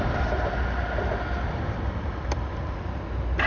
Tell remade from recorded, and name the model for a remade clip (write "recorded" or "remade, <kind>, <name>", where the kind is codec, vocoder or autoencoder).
recorded